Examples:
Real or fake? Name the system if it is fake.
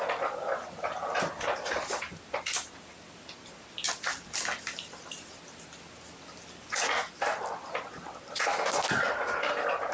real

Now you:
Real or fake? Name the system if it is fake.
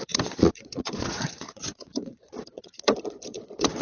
fake, vocoder, Vocos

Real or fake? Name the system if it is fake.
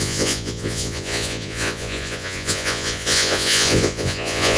fake, vocoder, Vocos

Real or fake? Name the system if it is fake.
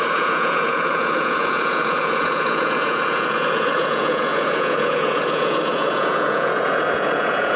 fake, vocoder, Vocos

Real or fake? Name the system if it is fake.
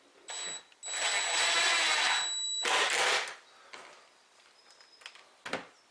real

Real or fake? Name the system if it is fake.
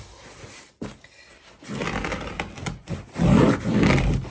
real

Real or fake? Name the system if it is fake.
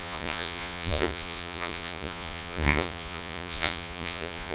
fake, vocoder, Vocos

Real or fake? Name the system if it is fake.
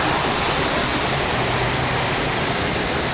real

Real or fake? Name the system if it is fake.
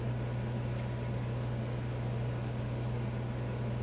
real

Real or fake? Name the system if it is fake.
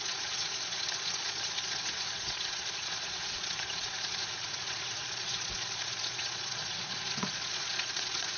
fake, vocoder, Vocos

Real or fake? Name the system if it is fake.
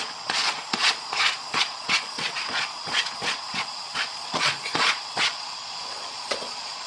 fake, vocoder, Vocos